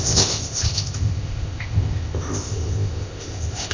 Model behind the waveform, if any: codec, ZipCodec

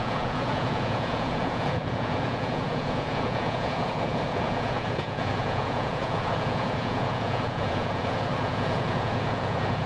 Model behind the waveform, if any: vocoder, Vocos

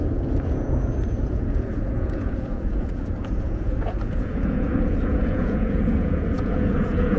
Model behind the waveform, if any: vocoder, Vocos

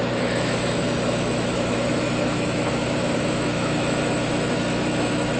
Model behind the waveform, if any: autoencoder, DAC-VAE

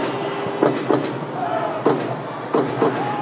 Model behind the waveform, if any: none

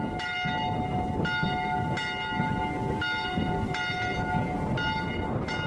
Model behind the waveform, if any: none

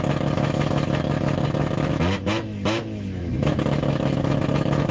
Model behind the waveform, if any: autoencoder, DAC-VAE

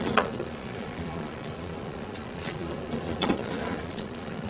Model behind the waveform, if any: vocoder, Vocos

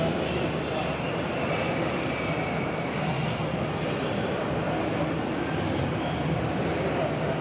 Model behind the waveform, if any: none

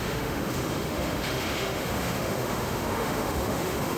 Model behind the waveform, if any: autoencoder, DAC-VAE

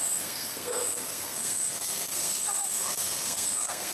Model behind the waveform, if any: codec, SNAC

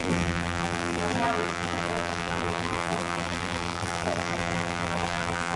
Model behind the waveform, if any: vocoder, BigVGAN v2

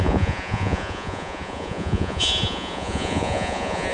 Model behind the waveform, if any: vocoder, Vocos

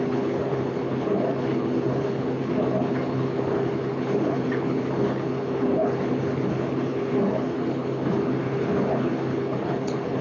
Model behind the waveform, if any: codec, HILCodec